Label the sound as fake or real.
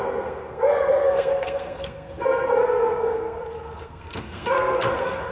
fake